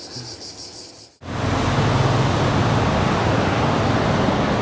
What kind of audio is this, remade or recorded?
recorded